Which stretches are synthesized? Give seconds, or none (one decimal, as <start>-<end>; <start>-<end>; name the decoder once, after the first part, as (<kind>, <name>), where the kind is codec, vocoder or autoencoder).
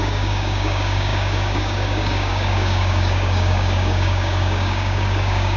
0.0-5.6 (codec, DAC)